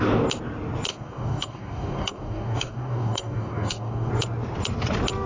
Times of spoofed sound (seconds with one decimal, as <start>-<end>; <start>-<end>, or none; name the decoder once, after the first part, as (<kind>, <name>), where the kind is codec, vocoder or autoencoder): 0.9-4.1 (codec, DAC)